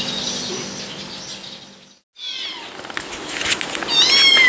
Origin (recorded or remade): recorded